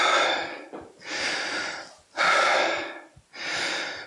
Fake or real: real